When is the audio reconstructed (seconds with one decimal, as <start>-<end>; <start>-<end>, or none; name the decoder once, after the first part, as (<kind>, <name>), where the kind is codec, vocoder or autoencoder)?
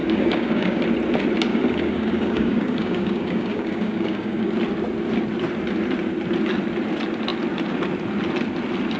0.0-0.8 (codec, DAC); 1.5-4.5